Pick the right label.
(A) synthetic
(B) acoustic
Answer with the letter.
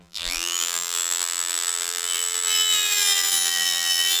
A